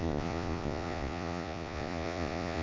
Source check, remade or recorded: remade